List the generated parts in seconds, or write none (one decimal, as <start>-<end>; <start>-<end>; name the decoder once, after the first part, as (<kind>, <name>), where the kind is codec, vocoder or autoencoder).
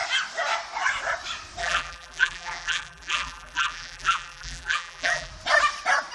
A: 1.6-5.3 (vocoder, BigVGAN v2)